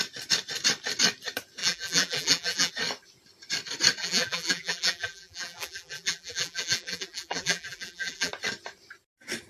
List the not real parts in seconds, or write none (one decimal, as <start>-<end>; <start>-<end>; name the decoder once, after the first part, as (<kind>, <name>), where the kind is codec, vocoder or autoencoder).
1.6-2.7 (vocoder, BigVGAN v2); 4.0-8.3